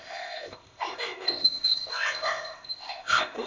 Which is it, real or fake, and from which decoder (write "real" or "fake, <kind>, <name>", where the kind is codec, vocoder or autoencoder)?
fake, codec, ZipCodec